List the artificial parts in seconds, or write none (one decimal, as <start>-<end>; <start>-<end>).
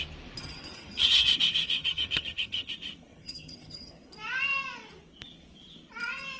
0.4-1.3; 1.8-2.7; 3.1-3.9